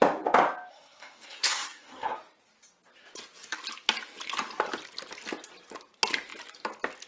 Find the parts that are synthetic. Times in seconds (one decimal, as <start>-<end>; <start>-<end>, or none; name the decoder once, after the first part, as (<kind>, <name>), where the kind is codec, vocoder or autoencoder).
0.7-2.2 (codec, SNAC)